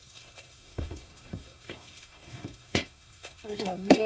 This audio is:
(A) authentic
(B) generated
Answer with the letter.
B